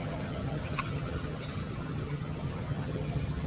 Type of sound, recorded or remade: remade